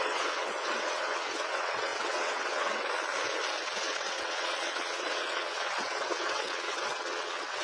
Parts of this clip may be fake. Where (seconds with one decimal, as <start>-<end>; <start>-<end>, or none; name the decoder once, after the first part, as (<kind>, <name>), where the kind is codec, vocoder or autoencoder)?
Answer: 0.0-2.9 (vocoder, WaveNeXt); 3.6-7.6